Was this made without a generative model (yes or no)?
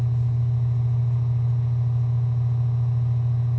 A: yes